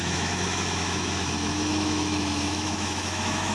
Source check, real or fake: fake